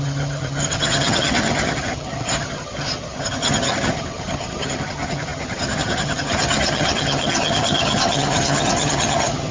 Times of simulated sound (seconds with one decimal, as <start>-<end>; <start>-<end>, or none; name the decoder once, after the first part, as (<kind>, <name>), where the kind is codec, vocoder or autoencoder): 0.0-9.5 (vocoder, HiFi-GAN)